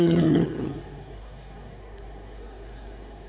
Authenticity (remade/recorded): remade